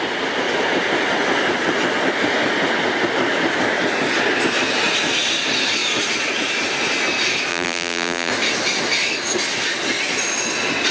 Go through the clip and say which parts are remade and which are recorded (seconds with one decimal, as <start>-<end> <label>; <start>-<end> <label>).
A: 0.0-7.5 recorded; 7.5-8.3 remade; 8.3-10.9 recorded

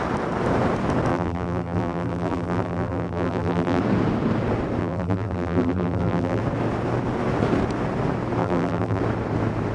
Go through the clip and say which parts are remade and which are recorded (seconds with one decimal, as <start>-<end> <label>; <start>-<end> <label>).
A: 0.0-1.1 recorded; 1.1-3.8 remade; 3.8-4.8 recorded; 4.8-6.4 remade; 6.4-8.4 recorded; 8.4-9.0 remade; 9.0-9.7 recorded

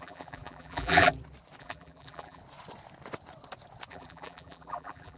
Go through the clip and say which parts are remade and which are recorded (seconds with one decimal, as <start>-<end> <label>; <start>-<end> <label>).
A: 0.0-1.1 remade; 1.1-1.6 recorded; 1.6-2.4 remade; 2.4-3.9 recorded; 3.9-5.2 remade

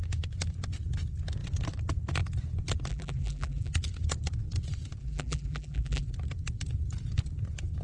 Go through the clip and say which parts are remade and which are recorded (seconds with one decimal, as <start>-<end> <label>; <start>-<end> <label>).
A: 0.0-2.9 recorded; 2.9-3.7 remade; 3.7-5.0 recorded; 5.0-6.1 remade; 6.1-7.8 recorded

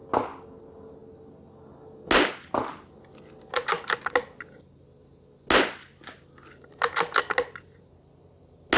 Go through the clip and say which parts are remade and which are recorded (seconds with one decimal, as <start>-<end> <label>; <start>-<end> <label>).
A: 0.0-8.8 recorded

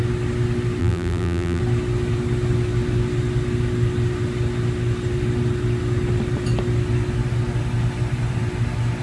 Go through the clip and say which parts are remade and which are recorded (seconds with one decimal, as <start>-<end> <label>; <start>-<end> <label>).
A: 0.0-0.8 recorded; 0.8-1.6 remade; 1.6-9.0 recorded

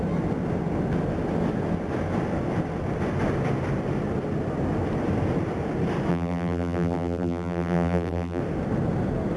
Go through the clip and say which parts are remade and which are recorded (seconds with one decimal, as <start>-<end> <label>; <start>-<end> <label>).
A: 0.0-6.1 recorded; 6.1-8.4 remade; 8.4-9.4 recorded

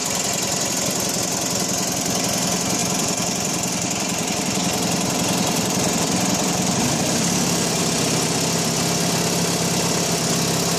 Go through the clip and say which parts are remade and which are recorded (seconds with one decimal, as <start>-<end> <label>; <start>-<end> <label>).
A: 0.0-2.8 recorded; 2.8-7.8 remade; 7.8-10.8 recorded